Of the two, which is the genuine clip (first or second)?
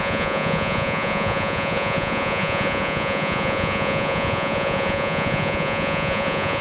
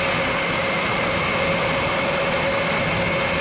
second